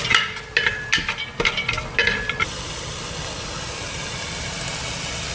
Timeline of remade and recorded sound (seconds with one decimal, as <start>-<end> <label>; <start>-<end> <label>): 0.0-5.3 recorded